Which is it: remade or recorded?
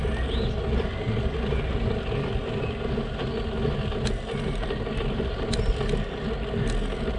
recorded